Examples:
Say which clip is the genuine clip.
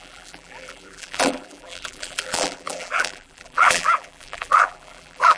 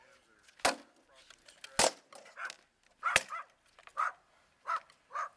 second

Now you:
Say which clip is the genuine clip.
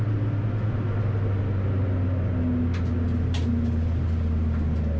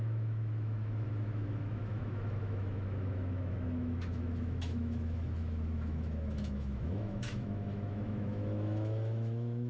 first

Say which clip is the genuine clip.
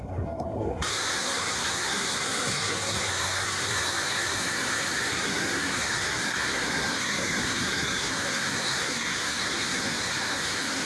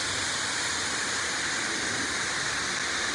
second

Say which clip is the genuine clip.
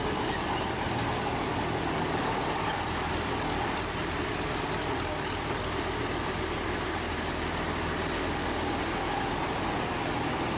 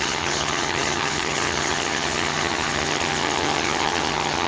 first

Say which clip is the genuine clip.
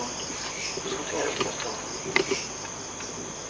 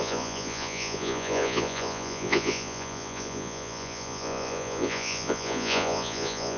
first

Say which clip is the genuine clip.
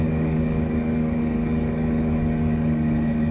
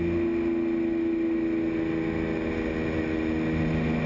second